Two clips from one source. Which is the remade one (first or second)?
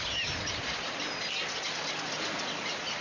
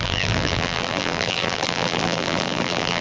second